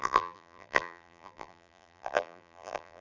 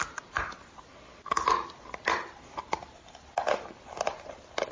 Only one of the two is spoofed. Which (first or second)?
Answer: first